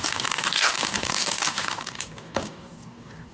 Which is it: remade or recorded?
remade